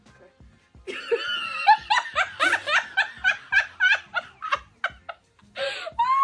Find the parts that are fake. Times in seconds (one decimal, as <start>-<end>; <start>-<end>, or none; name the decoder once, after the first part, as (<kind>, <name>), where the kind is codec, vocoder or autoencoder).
none